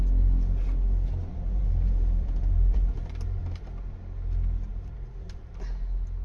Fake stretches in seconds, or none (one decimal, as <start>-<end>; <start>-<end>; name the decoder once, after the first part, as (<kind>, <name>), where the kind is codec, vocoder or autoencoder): 1.3-3.4 (vocoder, BigVGAN v2); 4.7-5.5